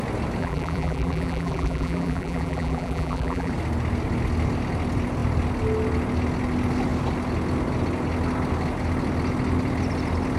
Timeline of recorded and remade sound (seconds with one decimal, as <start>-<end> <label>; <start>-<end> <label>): 0.0-0.4 recorded; 0.4-3.5 remade; 3.5-10.4 recorded

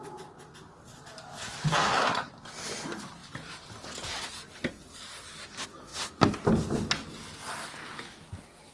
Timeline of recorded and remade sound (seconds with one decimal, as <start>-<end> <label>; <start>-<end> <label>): 0.0-1.8 recorded; 1.8-2.3 remade; 2.3-8.7 recorded